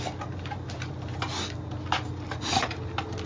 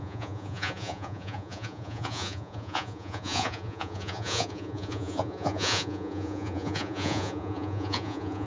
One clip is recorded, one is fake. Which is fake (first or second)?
second